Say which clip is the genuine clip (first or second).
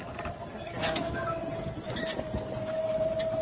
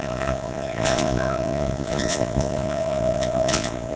first